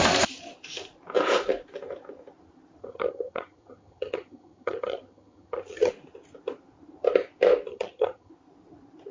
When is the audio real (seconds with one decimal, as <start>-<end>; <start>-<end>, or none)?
0.0-2.8; 5.9-7.7; 8.3-9.1